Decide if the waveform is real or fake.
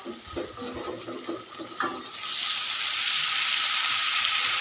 real